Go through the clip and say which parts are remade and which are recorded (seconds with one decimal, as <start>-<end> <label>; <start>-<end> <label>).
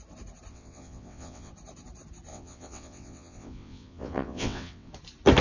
0.0-0.5 recorded; 0.5-1.5 remade; 1.5-2.3 recorded; 2.3-4.9 remade; 4.9-5.4 recorded